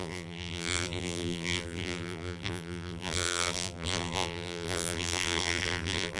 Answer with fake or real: fake